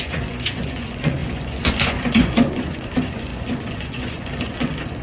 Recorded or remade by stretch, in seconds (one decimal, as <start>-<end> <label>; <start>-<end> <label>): 0.0-5.0 remade

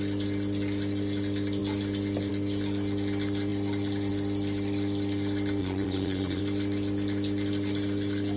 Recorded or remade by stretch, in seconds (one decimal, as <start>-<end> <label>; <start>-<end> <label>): 0.0-5.6 recorded; 5.6-6.4 remade; 6.4-8.4 recorded

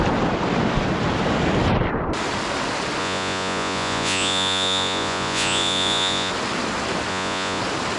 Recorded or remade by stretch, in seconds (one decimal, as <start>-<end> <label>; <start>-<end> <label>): 0.0-3.0 recorded; 3.0-6.3 remade; 6.3-7.1 recorded; 7.1-7.6 remade; 7.6-8.0 recorded

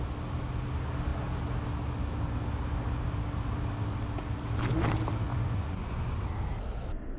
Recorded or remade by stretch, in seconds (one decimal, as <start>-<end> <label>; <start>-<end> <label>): 0.0-5.3 recorded; 5.3-6.1 remade; 6.1-7.2 recorded

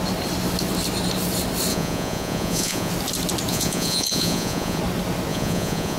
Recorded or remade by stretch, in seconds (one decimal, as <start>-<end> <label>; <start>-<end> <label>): 0.0-1.7 recorded; 1.7-2.9 remade; 2.9-3.5 recorded; 3.5-4.8 remade; 4.8-5.3 recorded; 5.3-6.0 remade

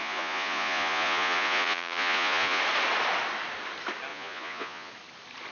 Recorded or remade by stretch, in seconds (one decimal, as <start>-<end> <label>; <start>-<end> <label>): 0.0-2.6 remade; 2.6-4.1 recorded; 4.1-4.9 remade; 4.9-5.5 recorded

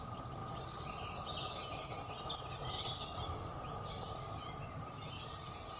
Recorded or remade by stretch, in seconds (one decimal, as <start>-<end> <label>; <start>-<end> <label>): 0.0-5.8 recorded